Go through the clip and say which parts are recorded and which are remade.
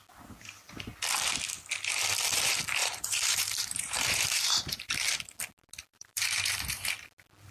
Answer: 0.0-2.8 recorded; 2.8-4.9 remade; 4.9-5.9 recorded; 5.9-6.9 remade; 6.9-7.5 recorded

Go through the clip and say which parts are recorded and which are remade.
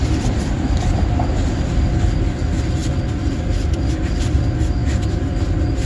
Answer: 0.0-0.9 remade; 0.9-2.8 recorded; 2.8-3.9 remade; 3.9-5.9 recorded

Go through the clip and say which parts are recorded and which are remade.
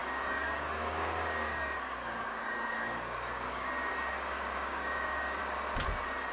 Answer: 0.0-5.4 remade; 5.4-6.3 recorded